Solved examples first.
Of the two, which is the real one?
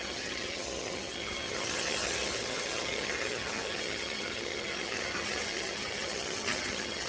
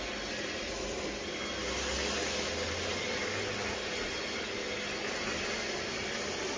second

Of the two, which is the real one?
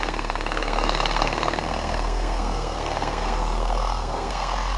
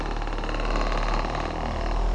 second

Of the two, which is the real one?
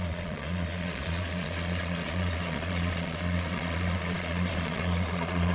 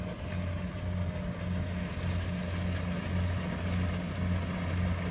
second